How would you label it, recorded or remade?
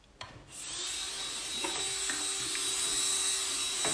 recorded